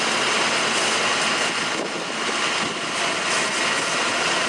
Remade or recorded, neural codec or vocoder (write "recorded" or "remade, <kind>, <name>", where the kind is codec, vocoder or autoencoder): recorded